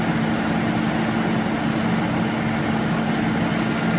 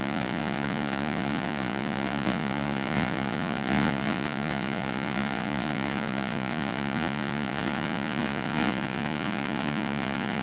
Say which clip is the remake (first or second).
second